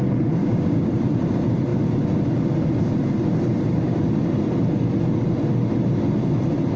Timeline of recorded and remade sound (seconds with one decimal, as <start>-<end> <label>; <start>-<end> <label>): 0.0-0.4 recorded; 0.4-0.9 remade; 0.9-6.8 recorded